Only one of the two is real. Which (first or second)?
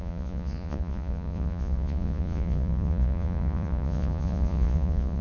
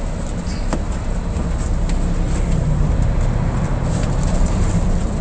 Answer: second